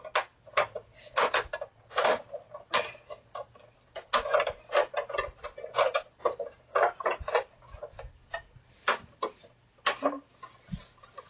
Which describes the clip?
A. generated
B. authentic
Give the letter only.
B